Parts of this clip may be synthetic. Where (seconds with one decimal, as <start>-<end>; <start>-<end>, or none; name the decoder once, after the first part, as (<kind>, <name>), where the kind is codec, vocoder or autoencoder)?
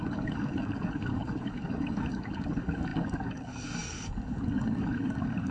0.0-5.5 (codec, DAC)